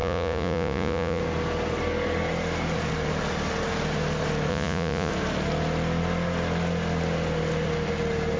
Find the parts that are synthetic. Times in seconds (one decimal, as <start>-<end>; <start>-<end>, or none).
0.0-1.2; 4.5-5.1